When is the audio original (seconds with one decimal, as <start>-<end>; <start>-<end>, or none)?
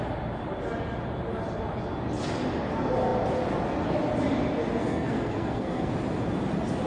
0.0-4.8; 5.9-6.9